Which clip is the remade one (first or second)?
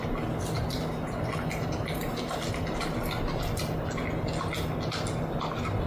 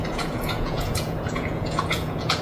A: second